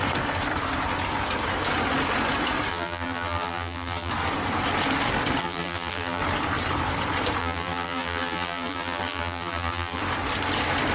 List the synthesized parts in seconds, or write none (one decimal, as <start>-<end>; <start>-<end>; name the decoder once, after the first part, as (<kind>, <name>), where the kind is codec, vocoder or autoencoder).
2.7-4.1 (vocoder, BigVGAN v2); 5.4-6.2; 7.4-10.0